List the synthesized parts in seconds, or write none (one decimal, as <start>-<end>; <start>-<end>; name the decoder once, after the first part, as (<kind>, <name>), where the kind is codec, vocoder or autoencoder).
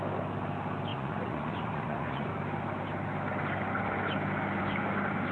0.9-2.3 (vocoder, Vocos)